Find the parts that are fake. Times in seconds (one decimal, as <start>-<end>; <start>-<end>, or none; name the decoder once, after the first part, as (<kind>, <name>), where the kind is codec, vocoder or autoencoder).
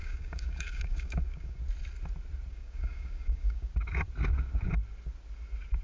0.0-1.6 (codec, DAC); 2.5-3.7